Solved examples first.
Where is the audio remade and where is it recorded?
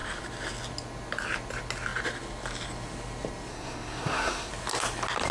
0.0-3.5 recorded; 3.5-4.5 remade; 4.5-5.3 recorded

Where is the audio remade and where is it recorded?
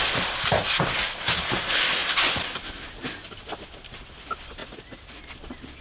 0.0-4.6 recorded; 4.6-5.2 remade; 5.2-5.8 recorded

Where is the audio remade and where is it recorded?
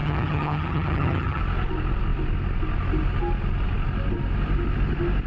0.0-1.4 remade; 1.4-5.3 recorded